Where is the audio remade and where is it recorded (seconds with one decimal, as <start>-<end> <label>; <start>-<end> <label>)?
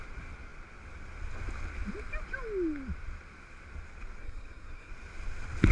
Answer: 0.0-4.2 recorded; 4.2-4.9 remade; 4.9-5.7 recorded